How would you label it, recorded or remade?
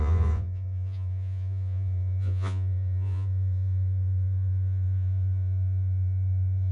remade